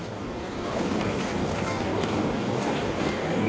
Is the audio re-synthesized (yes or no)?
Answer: yes